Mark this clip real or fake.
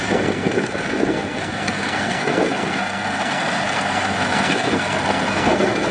fake